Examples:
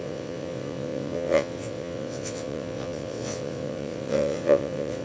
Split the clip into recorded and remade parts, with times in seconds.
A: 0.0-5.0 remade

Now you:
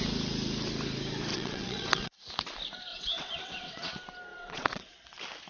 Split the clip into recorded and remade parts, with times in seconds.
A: 0.0-1.3 recorded; 1.3-2.2 remade; 2.2-2.9 recorded; 2.9-3.9 remade; 3.9-4.3 recorded; 4.3-4.9 remade; 4.9-5.5 recorded

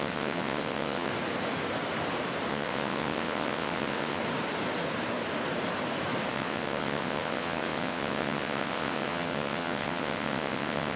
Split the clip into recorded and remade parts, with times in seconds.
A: 0.0-1.1 remade; 1.1-2.5 recorded; 2.5-4.2 remade; 4.2-6.3 recorded; 6.3-11.0 remade

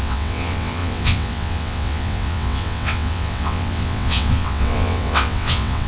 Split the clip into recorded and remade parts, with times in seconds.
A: 0.0-5.9 remade

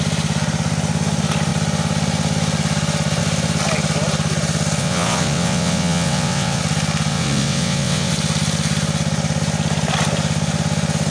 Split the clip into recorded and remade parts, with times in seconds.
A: 0.0-4.8 recorded; 4.8-6.6 remade; 6.6-7.1 recorded; 7.1-8.1 remade; 8.1-11.1 recorded

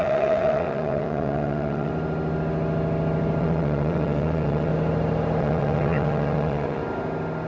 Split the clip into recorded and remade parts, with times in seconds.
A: 0.0-1.9 remade; 1.9-3.4 recorded; 3.4-4.7 remade; 4.7-5.4 recorded; 5.4-6.8 remade; 6.8-7.5 recorded

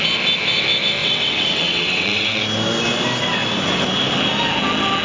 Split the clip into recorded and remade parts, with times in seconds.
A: 0.0-1.0 recorded; 1.0-2.4 remade; 2.4-5.0 recorded